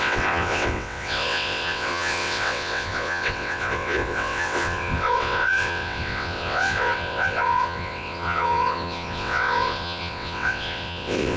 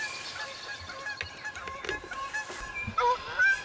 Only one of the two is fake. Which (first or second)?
first